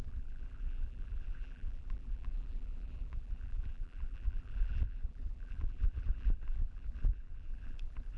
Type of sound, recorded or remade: remade